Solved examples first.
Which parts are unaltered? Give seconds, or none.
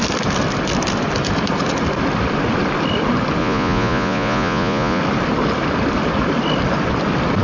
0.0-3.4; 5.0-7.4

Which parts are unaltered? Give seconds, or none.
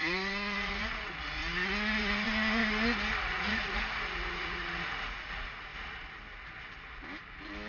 1.4-2.0; 2.6-3.2; 5.7-7.7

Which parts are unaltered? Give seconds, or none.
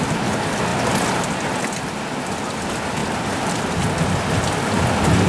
0.0-5.3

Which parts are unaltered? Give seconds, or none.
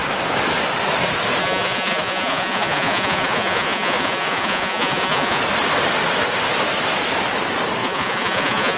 0.0-1.4; 5.4-7.8